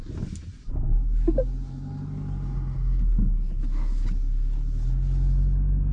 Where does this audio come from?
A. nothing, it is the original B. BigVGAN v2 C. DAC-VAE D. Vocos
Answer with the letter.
A